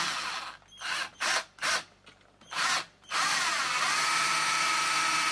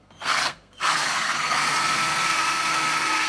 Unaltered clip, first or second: first